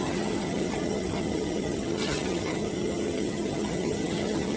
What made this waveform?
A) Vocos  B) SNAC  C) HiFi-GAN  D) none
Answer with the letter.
C